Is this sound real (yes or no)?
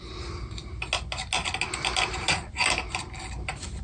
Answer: yes